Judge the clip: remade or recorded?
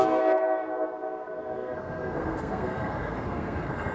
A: remade